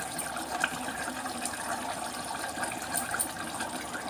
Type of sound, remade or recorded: remade